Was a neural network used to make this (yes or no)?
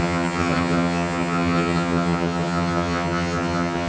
yes